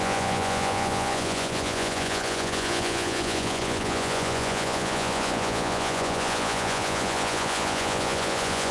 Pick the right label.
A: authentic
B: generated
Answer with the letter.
B